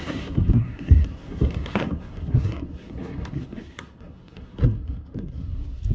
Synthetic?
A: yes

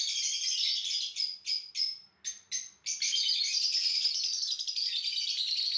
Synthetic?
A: no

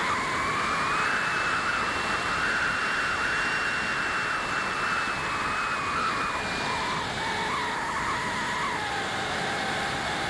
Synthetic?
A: no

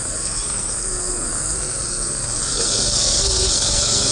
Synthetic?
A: yes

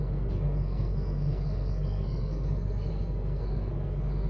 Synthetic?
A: yes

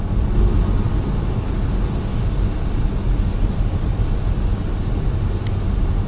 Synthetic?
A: no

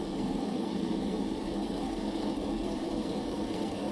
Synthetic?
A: yes